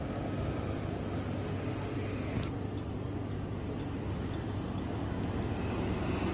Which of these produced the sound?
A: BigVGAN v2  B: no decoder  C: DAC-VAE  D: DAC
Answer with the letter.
B